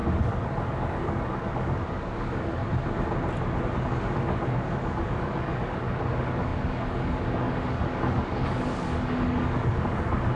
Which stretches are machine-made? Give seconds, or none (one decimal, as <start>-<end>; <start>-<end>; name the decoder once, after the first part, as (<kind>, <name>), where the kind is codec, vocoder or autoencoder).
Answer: 0.0-2.6 (codec, DAC); 3.8-10.4